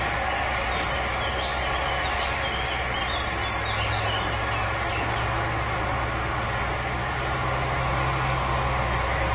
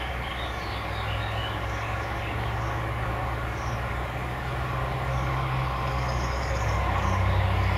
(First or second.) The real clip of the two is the first